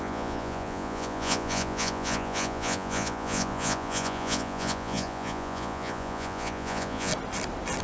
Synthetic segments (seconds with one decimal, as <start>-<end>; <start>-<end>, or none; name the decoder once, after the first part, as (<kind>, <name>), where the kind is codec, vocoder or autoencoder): 0.0-7.1 (vocoder, Vocos)

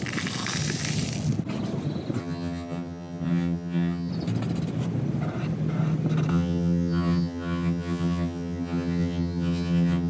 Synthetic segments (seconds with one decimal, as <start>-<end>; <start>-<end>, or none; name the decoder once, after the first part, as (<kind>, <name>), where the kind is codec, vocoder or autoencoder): 2.2-4.1 (vocoder, HiFi-GAN); 6.3-10.1

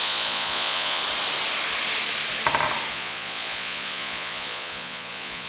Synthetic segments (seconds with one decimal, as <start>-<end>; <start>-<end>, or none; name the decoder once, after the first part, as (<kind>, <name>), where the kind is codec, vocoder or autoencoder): 0.0-1.0 (vocoder, Vocos); 2.9-5.5

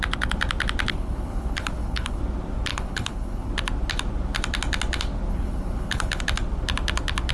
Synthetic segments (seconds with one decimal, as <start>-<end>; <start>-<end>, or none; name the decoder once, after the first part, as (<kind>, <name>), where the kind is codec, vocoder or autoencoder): 0.9-2.2 (codec, HILCodec); 2.7-3.5; 5.3-6.2